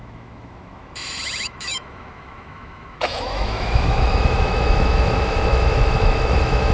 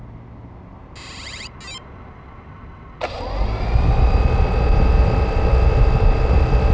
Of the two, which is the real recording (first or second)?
second